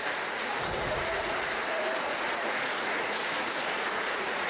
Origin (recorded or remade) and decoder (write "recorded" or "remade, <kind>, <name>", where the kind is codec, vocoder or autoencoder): remade, vocoder, Vocos